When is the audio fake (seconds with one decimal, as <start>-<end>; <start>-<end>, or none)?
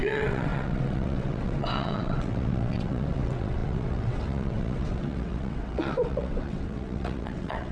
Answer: 0.0-7.7